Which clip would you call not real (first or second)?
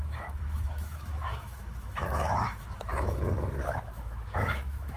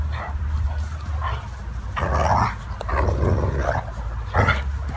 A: first